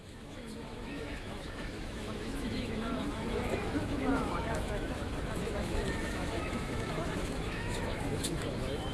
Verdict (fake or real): fake